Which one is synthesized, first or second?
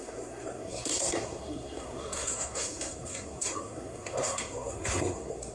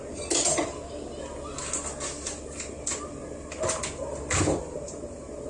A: first